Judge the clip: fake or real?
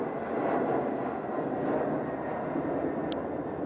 real